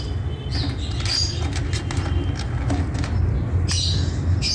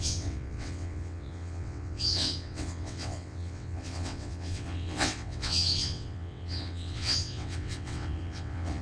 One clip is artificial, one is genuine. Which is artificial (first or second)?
second